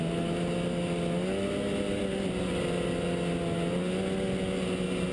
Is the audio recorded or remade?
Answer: recorded